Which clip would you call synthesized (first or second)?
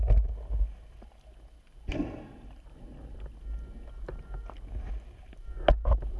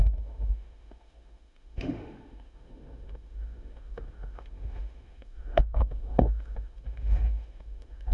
second